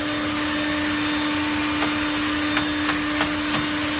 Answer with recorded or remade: recorded